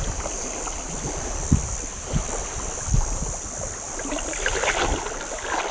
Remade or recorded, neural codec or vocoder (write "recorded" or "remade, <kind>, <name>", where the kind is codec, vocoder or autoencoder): recorded